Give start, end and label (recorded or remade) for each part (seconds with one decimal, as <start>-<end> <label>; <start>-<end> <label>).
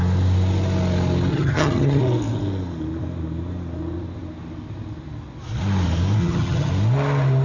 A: 0.0-1.3 recorded; 1.3-2.0 remade; 2.0-6.2 recorded; 6.2-6.7 remade; 6.7-7.4 recorded